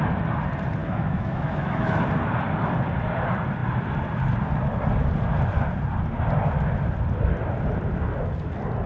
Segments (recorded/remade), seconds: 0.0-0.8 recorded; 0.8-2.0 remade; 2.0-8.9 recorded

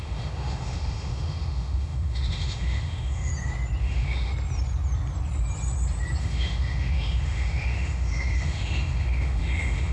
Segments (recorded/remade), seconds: 0.0-3.3 remade; 3.3-3.8 recorded; 3.8-4.3 remade; 4.3-6.2 recorded; 6.2-9.9 remade